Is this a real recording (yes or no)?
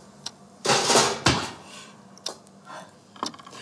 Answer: yes